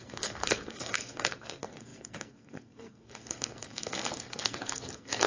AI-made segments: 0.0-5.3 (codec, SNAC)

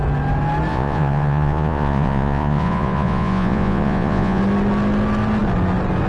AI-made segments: 0.7-4.4 (vocoder, Vocos)